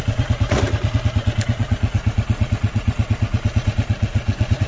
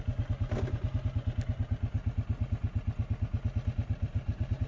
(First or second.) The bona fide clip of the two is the second